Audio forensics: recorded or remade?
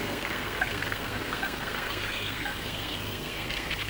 remade